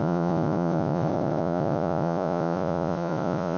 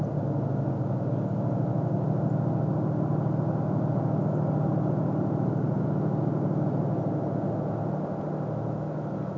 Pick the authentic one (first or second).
second